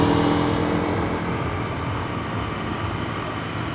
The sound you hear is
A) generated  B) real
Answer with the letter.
B